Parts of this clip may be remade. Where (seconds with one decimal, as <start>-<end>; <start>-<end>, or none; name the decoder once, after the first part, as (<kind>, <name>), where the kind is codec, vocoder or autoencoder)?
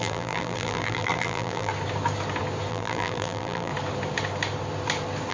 0.0-1.7 (vocoder, BigVGAN v2); 2.7-3.7